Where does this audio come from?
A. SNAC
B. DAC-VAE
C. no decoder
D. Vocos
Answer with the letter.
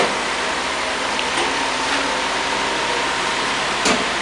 C